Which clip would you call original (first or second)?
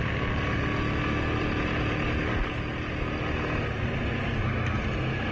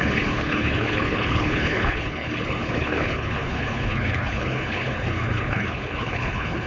first